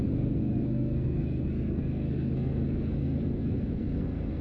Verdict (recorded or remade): remade